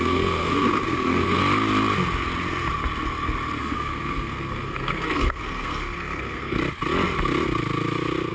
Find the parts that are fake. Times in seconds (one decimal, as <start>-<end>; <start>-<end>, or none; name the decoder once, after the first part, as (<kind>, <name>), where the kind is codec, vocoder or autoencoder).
0.0-1.4 (codec, SNAC); 3.6-6.6